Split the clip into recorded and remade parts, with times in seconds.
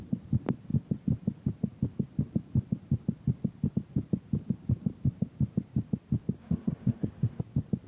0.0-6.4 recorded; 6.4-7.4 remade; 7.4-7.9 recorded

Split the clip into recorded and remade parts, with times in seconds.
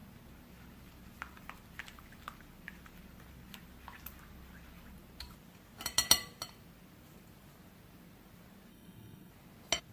0.0-8.7 recorded; 8.7-9.3 remade; 9.3-9.9 recorded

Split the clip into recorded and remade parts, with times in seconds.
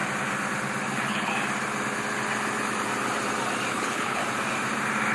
0.0-0.9 recorded; 0.9-1.3 remade; 1.3-3.7 recorded; 3.7-4.2 remade; 4.2-5.1 recorded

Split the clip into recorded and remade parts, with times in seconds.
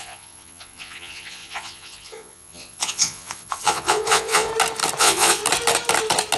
0.0-4.5 remade; 4.5-5.0 recorded; 5.0-5.4 remade; 5.4-6.4 recorded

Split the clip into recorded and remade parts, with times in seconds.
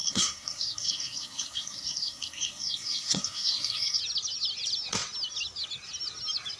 0.0-4.0 remade; 4.0-6.6 recorded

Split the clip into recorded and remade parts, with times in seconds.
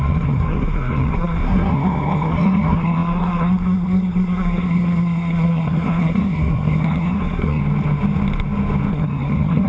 0.0-7.6 remade; 7.6-8.9 recorded; 8.9-9.7 remade